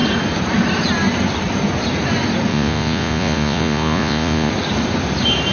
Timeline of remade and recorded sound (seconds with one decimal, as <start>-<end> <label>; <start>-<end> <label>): 0.0-2.5 recorded; 2.5-4.5 remade; 4.5-5.5 recorded